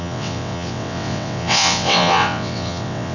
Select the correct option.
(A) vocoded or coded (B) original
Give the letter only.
A